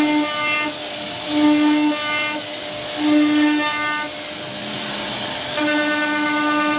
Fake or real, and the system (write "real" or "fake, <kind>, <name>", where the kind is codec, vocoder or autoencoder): real